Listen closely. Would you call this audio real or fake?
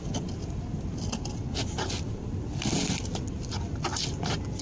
real